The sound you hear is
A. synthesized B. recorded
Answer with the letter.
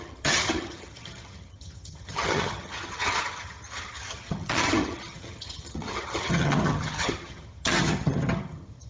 A